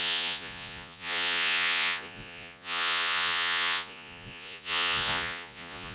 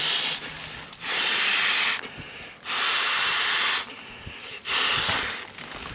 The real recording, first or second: second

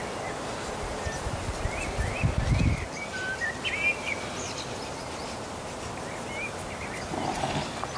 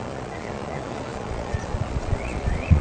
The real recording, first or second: first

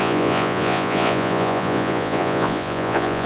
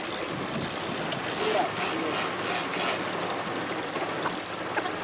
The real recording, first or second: second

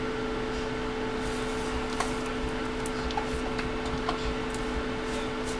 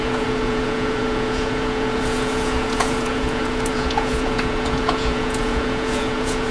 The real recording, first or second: first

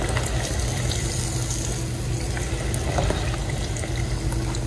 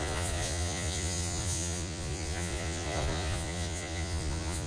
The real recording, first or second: first